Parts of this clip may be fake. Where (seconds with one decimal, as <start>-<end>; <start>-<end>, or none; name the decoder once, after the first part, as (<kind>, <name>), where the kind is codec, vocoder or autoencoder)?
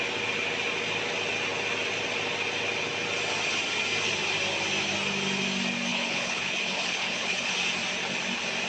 5.9-7.5 (codec, HILCodec)